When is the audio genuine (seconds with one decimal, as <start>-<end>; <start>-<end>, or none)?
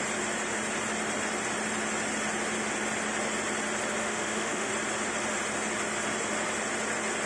0.0-4.0; 4.7-7.3